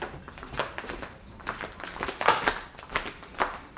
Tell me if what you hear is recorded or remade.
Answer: recorded